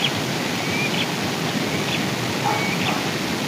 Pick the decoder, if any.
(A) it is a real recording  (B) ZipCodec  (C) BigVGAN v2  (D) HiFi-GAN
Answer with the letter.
A